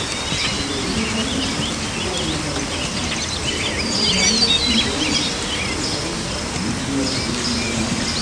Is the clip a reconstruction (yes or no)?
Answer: no